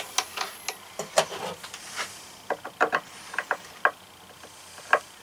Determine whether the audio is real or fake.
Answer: real